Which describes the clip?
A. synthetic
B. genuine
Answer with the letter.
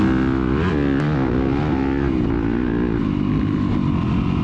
B